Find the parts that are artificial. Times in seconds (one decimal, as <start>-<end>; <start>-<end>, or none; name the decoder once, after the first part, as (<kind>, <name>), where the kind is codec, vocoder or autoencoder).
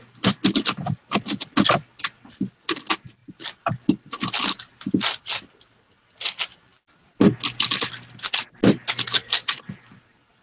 3.2-4.9 (vocoder, BigVGAN v2)